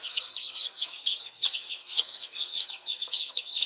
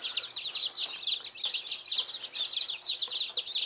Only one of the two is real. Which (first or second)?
second